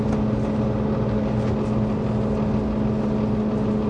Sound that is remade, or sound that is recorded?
recorded